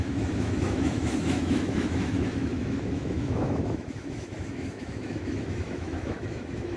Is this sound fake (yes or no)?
yes